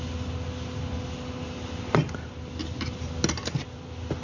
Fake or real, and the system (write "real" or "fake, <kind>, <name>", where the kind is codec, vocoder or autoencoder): real